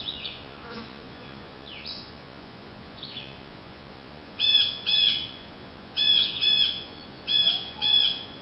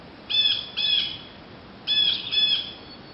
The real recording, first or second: second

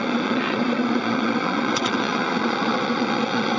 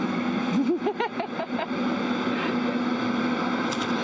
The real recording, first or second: second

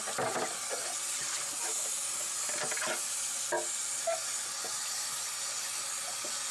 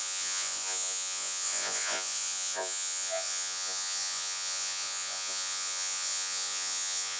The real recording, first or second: first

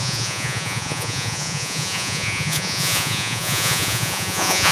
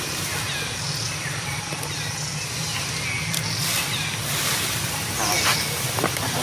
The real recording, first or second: second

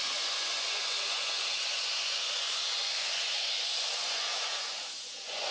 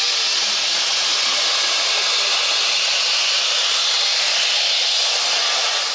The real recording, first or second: second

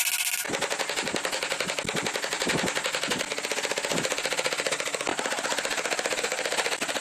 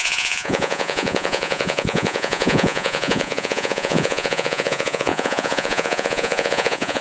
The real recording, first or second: first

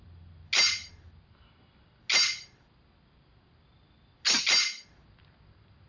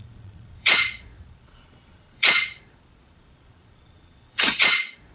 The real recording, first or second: first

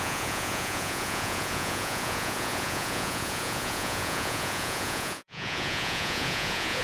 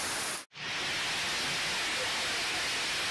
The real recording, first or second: second